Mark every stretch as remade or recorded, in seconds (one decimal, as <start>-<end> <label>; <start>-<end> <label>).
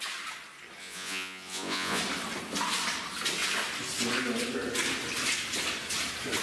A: 0.0-0.8 recorded; 0.8-2.0 remade; 2.0-6.4 recorded